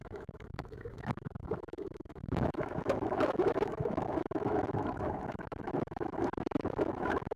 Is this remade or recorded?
remade